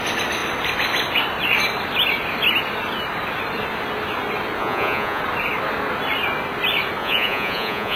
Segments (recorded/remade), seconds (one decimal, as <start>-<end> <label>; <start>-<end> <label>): 0.0-4.6 recorded; 4.6-5.2 remade; 5.2-7.0 recorded; 7.0-8.0 remade